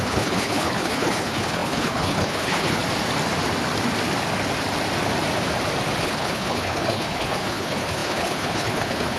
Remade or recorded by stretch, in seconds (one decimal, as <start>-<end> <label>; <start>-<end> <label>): 0.0-2.8 remade; 2.8-6.0 recorded; 6.0-9.2 remade